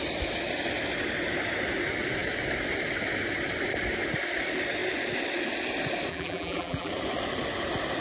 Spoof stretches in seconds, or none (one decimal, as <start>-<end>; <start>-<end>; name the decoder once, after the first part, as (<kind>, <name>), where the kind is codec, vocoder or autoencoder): 6.1-6.9 (vocoder, BigVGAN v2)